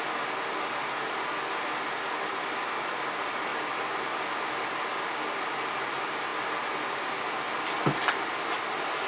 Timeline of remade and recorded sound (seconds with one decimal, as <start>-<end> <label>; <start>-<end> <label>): 0.0-9.1 recorded